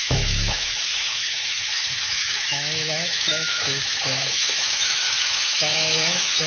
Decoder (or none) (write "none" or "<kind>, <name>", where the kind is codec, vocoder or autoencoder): autoencoder, DAC-VAE